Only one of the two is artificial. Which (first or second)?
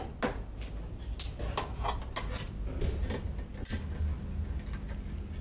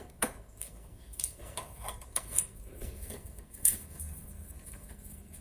second